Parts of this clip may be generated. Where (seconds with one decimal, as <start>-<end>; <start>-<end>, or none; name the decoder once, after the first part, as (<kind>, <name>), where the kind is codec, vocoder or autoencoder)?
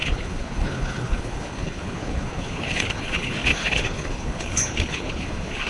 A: 0.0-5.7 (codec, HILCodec)